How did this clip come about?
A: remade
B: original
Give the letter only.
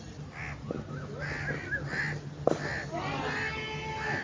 B